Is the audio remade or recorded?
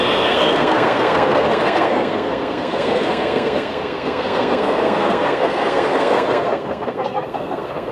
remade